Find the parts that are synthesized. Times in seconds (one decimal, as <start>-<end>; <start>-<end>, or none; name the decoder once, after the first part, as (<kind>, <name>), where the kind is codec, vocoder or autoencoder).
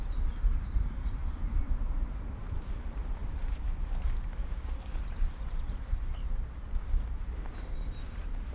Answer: 0.0-4.4 (vocoder, BigVGAN v2); 8.0-8.5